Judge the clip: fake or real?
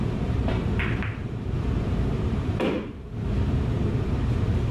fake